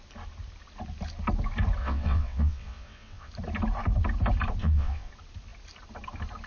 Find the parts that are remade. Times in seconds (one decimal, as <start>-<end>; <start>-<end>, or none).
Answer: 1.8-3.3; 4.6-5.1